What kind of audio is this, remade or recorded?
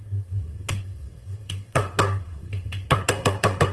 remade